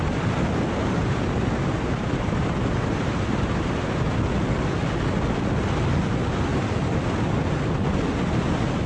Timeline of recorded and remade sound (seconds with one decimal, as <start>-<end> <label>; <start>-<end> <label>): 0.0-0.8 recorded; 0.8-4.1 remade; 4.1-8.9 recorded